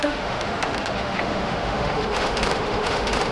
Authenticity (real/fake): fake